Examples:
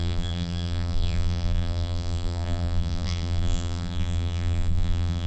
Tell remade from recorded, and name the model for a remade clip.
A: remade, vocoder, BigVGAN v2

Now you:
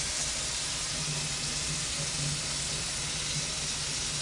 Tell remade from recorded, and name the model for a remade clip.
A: recorded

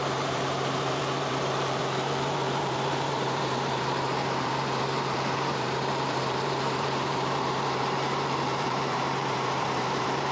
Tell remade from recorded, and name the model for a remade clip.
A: remade, vocoder, BigVGAN v2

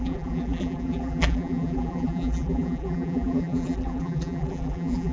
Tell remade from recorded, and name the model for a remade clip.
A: remade, vocoder, BigVGAN v2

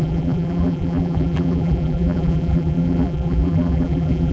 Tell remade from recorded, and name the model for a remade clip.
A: remade, vocoder, BigVGAN v2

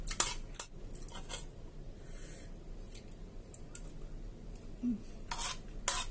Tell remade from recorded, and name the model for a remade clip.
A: recorded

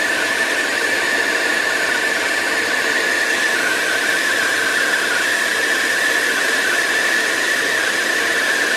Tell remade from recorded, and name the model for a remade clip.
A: recorded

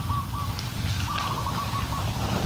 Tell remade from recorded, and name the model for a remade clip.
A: recorded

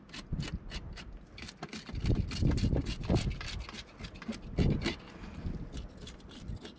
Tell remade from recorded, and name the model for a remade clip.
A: recorded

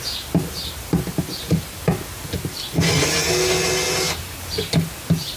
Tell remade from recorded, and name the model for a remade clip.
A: recorded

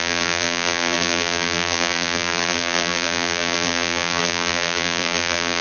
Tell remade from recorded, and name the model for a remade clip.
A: remade, vocoder, BigVGAN v2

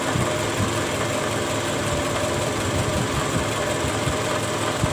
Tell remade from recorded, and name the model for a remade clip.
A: remade, vocoder, BigVGAN v2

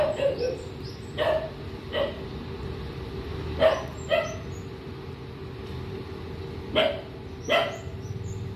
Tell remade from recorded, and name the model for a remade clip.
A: recorded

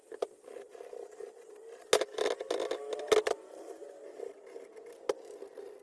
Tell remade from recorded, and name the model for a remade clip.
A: recorded